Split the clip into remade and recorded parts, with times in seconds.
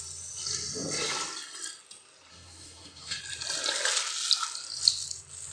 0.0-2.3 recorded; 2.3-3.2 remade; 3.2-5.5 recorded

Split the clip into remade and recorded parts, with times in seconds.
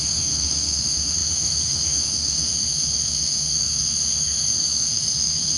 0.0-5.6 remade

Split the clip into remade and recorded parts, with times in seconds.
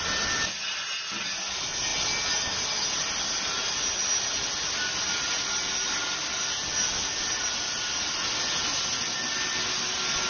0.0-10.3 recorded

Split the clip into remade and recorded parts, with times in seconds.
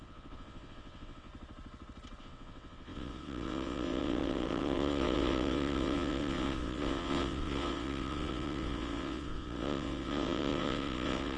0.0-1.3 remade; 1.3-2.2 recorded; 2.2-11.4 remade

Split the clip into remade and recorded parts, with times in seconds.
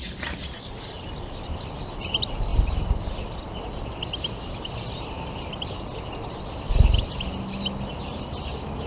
0.0-8.9 recorded